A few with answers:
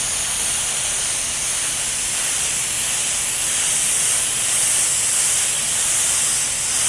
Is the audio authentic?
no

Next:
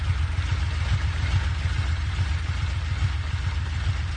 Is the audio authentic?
yes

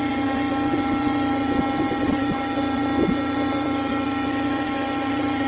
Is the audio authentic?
yes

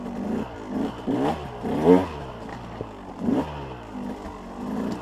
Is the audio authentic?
yes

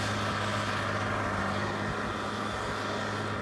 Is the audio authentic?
yes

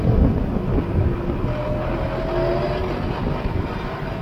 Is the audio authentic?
yes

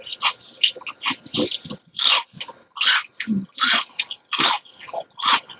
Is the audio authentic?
yes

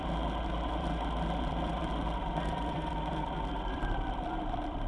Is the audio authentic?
no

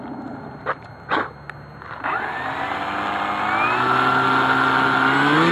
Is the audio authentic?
yes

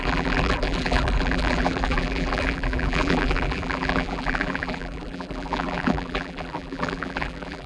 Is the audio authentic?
no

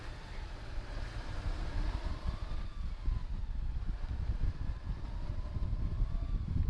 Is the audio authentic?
no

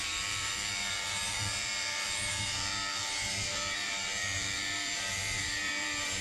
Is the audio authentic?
no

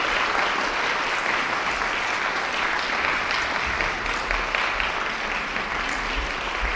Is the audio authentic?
yes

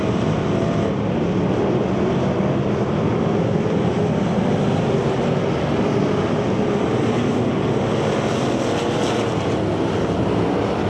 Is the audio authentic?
yes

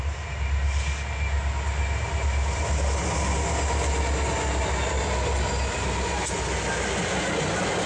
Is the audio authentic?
yes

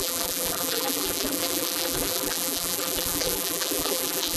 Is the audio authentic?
no